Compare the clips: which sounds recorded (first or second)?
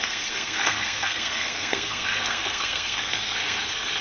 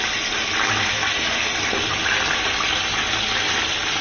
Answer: second